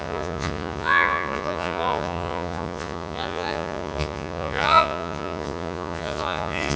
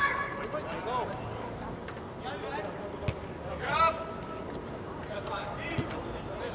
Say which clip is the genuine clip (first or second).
second